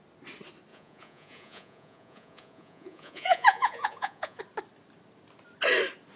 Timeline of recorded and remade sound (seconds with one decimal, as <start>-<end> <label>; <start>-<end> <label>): 0.0-0.7 recorded; 0.7-4.4 remade; 4.4-6.2 recorded